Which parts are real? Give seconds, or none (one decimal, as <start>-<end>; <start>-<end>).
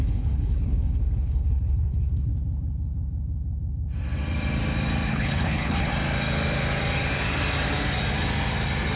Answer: 2.3-5.1; 5.9-9.0